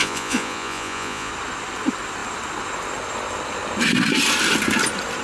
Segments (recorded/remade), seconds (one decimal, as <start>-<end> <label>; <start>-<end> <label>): 0.0-1.3 remade; 1.3-5.2 recorded